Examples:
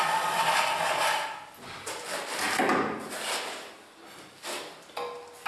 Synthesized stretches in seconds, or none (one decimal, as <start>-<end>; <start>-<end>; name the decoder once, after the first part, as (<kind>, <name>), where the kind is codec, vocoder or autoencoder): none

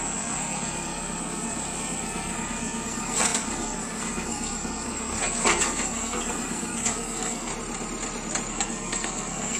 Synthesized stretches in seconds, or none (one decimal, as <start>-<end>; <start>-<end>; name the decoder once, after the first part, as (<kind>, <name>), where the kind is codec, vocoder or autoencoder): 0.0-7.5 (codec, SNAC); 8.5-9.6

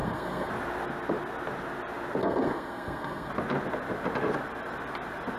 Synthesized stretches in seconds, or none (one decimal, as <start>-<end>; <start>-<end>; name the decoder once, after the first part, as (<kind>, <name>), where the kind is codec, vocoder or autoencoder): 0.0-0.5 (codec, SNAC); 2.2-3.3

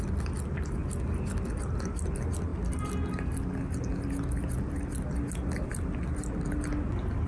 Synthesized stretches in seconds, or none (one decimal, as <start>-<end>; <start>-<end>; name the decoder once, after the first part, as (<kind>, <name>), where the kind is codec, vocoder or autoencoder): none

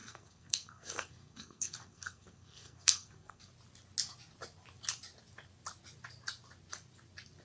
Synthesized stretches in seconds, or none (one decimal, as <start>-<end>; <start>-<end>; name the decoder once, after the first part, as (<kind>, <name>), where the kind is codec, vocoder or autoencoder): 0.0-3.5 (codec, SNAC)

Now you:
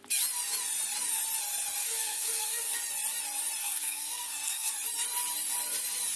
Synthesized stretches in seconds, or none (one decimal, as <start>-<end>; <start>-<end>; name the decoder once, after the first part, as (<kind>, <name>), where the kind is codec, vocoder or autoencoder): 1.8-2.7 (codec, SNAC); 3.6-4.7

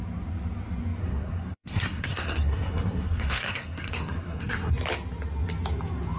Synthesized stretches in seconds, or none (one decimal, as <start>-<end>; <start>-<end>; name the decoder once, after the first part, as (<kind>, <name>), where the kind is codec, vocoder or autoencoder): 1.0-4.7 (codec, SNAC)